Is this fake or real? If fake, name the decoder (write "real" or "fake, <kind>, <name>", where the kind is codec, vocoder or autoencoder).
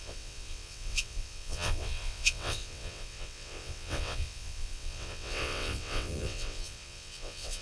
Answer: fake, vocoder, WaveNeXt